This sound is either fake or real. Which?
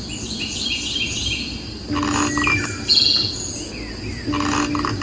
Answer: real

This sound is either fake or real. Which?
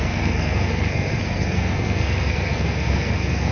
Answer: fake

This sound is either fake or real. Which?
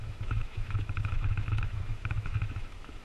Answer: fake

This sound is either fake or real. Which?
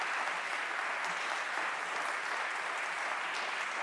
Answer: real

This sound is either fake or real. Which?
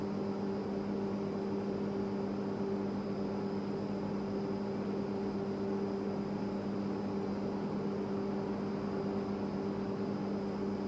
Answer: real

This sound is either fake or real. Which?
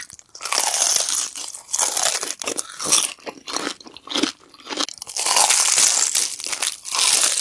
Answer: real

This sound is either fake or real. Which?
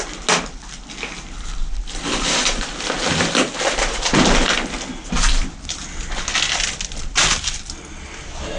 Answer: real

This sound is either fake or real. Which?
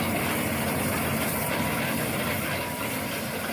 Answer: real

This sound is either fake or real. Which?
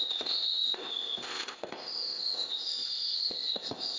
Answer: fake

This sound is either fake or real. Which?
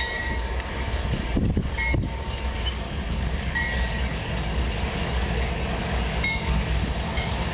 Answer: fake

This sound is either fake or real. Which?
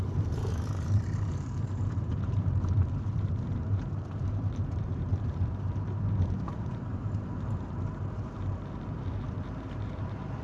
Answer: fake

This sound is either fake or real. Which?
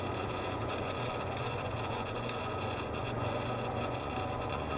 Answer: fake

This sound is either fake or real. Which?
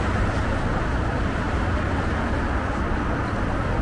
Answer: real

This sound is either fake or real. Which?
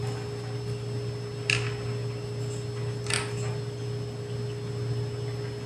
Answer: real